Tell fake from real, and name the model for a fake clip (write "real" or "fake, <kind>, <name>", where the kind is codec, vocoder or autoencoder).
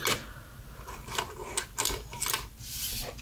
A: real